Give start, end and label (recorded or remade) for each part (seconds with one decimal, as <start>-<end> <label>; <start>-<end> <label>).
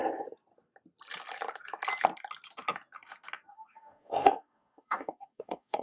0.0-3.5 recorded; 3.5-5.8 remade